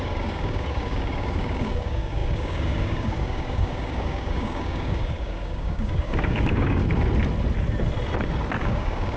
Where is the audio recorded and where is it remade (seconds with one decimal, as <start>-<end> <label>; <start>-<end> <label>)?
0.0-6.8 remade; 6.8-8.6 recorded; 8.6-9.2 remade